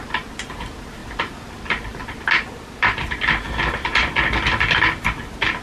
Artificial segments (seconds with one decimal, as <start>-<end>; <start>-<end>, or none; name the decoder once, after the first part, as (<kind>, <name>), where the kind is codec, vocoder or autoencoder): none